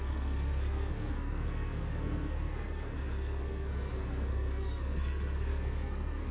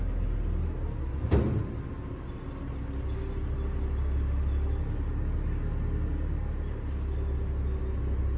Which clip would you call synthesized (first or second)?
first